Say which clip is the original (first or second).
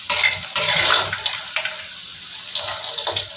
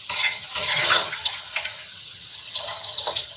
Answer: first